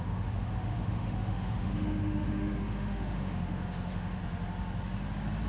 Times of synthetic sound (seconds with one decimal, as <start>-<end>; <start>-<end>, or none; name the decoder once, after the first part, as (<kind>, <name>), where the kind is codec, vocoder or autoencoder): 0.0-4.2 (autoencoder, DAC-VAE)